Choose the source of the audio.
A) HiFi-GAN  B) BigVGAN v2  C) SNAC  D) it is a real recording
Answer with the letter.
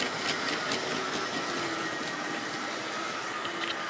D